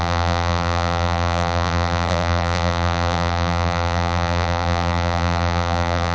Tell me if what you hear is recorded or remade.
remade